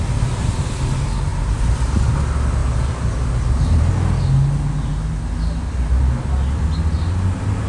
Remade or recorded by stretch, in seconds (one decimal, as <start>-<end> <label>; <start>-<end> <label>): 0.0-1.3 recorded; 1.3-2.0 remade; 2.0-2.6 recorded; 2.6-3.9 remade; 3.9-7.7 recorded